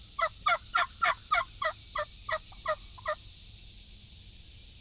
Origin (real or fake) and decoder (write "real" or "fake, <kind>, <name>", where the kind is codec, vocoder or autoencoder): real